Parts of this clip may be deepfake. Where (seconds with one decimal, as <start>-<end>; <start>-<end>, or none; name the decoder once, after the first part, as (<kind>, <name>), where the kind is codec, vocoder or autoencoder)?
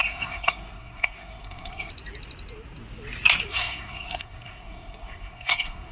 0.0-1.9 (codec, SNAC); 3.5-5.9